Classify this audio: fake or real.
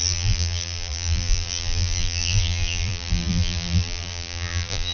fake